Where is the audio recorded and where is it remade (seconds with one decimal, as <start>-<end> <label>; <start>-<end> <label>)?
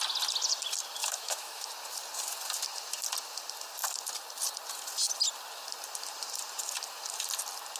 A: 0.0-1.0 recorded; 1.0-1.7 remade; 1.7-7.8 recorded